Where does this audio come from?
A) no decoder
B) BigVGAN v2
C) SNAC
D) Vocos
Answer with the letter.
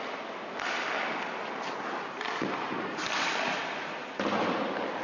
A